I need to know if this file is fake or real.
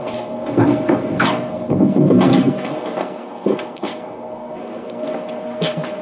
fake